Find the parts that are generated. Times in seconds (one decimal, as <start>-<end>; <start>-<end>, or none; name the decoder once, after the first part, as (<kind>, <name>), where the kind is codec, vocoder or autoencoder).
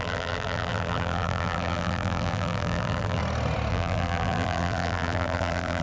0.0-3.2 (vocoder, BigVGAN v2); 3.7-5.8